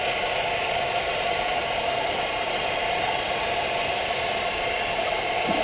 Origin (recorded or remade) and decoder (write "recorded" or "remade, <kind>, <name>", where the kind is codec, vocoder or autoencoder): remade, vocoder, BigVGAN v2